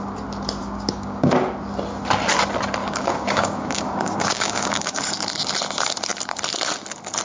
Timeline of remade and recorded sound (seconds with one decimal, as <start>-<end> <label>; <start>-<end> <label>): 0.0-0.6 recorded; 0.6-1.3 remade; 1.3-2.8 recorded; 2.8-5.0 remade; 5.0-7.2 recorded